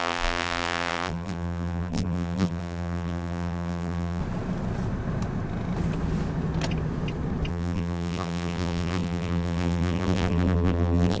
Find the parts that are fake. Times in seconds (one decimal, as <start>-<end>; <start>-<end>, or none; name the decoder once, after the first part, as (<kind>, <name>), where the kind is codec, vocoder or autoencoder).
0.0-4.2 (vocoder, BigVGAN v2); 7.5-11.2